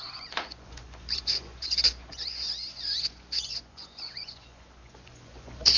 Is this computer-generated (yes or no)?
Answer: yes